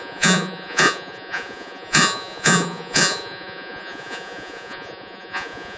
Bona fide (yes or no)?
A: no